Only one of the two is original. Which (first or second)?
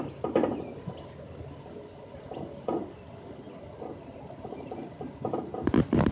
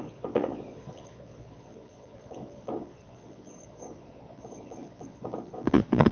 first